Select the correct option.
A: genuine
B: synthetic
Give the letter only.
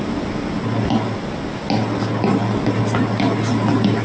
A